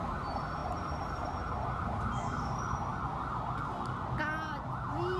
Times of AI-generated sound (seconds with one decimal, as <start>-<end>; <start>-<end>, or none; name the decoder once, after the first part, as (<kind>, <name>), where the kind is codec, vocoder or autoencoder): none